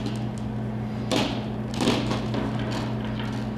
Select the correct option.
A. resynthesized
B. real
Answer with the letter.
B